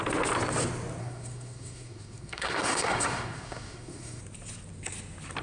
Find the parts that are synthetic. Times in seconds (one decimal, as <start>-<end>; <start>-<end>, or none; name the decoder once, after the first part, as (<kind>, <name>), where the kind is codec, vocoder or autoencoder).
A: 1.0-4.2 (codec, SNAC)